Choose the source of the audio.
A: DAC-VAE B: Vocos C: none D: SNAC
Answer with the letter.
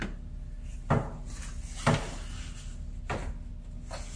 C